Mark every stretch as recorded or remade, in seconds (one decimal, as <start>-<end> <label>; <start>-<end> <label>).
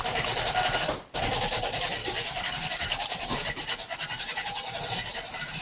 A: 0.0-2.0 recorded; 2.0-5.6 remade